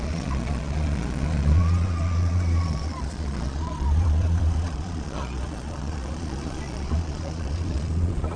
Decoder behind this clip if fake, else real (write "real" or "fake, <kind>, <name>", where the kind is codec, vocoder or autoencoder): fake, vocoder, Vocos